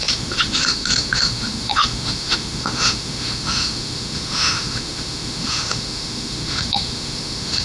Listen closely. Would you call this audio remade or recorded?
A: remade